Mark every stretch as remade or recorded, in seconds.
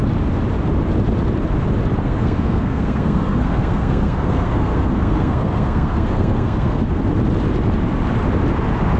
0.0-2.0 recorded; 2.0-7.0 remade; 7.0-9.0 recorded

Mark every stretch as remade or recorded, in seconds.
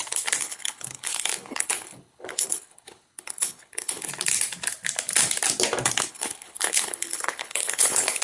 0.0-0.4 recorded; 0.4-4.1 remade; 4.1-6.1 recorded; 6.1-8.2 remade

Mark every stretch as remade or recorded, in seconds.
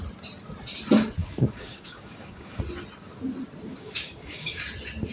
0.0-1.2 recorded; 1.2-2.6 remade; 2.6-3.7 recorded; 3.7-4.6 remade; 4.6-5.1 recorded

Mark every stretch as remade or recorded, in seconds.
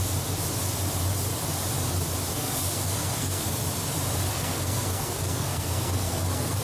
0.0-2.3 recorded; 2.3-3.6 remade; 3.6-4.3 recorded; 4.3-6.6 remade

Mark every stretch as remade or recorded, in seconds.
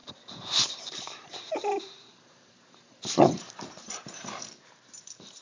0.0-5.4 remade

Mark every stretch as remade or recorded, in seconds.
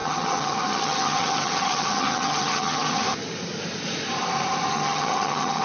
0.0-3.0 remade; 3.0-4.7 recorded; 4.7-5.6 remade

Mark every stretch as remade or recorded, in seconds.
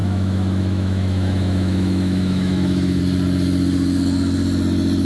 0.0-3.0 remade; 3.0-5.0 recorded